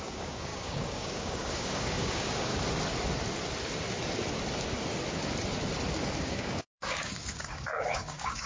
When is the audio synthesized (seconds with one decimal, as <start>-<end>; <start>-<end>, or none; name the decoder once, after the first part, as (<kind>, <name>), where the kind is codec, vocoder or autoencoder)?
0.0-2.5 (codec, DAC); 6.2-8.5